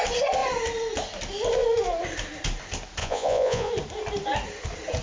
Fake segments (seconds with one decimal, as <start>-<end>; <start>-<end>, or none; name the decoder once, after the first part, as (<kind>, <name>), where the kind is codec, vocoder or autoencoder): 3.0-3.7 (vocoder, Vocos)